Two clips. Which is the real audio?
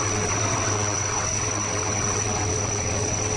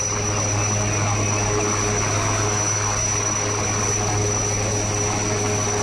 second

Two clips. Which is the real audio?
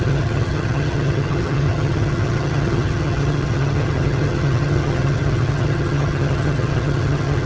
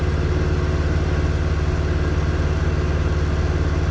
second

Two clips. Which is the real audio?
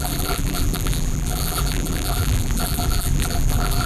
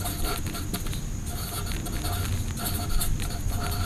second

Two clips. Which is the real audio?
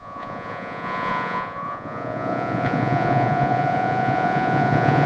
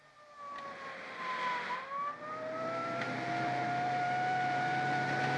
second